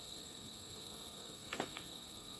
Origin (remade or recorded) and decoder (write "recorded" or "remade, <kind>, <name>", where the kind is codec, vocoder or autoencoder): remade, codec, SNAC